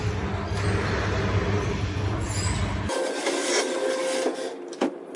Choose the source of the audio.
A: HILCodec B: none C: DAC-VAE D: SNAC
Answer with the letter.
B